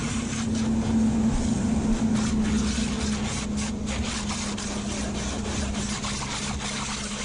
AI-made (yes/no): no